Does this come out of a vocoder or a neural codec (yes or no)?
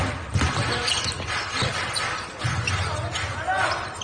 no